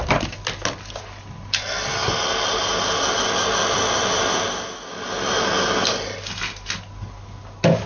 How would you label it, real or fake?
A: real